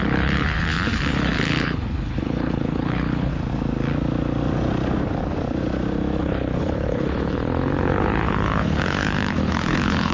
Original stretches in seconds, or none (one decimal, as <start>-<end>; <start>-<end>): 3.3-6.2